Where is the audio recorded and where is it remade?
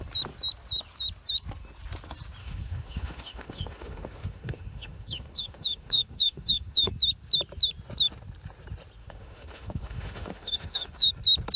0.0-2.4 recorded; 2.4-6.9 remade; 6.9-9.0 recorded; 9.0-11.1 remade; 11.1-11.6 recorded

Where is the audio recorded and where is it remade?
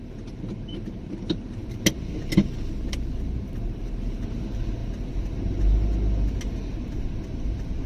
0.0-7.9 recorded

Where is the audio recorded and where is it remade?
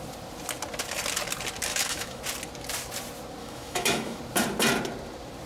0.0-1.7 recorded; 1.7-2.2 remade; 2.2-3.4 recorded; 3.4-4.2 remade; 4.2-5.5 recorded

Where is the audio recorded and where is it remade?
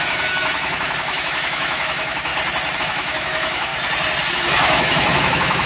0.0-2.3 remade; 2.3-2.8 recorded; 2.8-3.7 remade; 3.7-4.3 recorded; 4.3-5.7 remade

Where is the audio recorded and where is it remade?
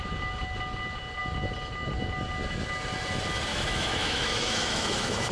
0.0-3.5 recorded; 3.5-5.3 remade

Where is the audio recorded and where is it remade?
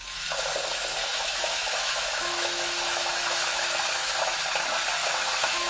0.0-1.0 recorded; 1.0-4.4 remade; 4.4-5.0 recorded; 5.0-5.7 remade